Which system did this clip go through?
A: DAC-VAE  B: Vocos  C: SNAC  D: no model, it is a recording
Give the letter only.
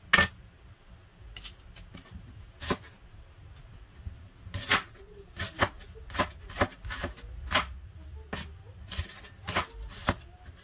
D